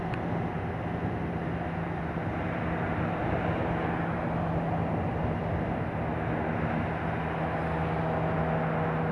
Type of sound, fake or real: real